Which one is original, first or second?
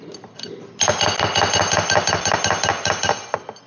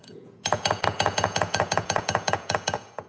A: first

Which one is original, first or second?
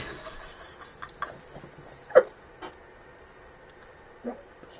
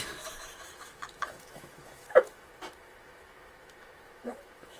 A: first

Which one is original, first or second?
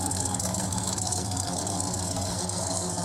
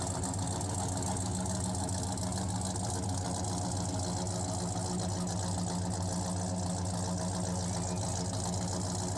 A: second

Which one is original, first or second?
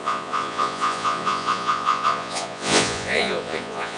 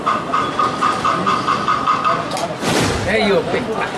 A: second